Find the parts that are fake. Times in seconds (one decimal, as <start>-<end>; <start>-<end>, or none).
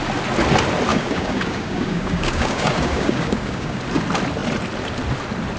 0.9-3.8